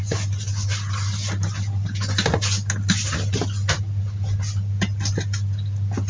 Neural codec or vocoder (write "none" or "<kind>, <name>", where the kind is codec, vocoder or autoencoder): none